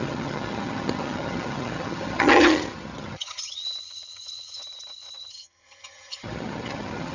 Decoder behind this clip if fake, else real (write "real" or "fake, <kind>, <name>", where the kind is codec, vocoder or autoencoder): fake, vocoder, HiFi-GAN